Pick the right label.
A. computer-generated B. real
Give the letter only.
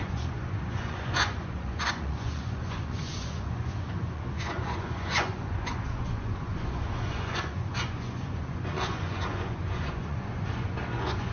A